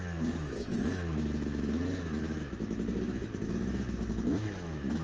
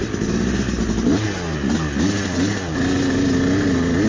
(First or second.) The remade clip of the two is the first